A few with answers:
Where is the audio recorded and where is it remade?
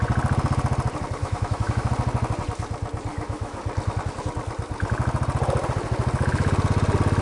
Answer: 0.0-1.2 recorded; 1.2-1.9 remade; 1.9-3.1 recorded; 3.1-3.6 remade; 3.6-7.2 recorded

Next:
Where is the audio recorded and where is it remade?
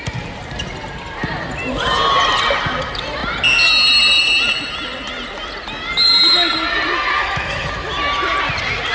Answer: 0.0-7.2 recorded; 7.2-7.7 remade; 7.7-8.9 recorded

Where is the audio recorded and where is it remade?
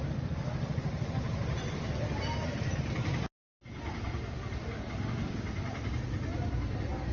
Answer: 0.0-7.1 recorded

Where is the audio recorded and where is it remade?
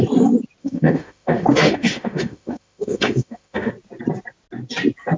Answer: 0.0-0.6 recorded; 0.6-3.7 remade; 3.7-5.2 recorded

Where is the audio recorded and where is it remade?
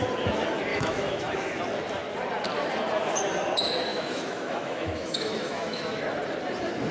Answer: 0.0-0.7 recorded; 0.7-1.6 remade; 1.6-3.9 recorded; 3.9-6.0 remade; 6.0-6.9 recorded